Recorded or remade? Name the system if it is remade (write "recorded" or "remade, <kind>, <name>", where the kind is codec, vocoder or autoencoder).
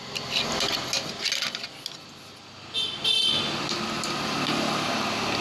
recorded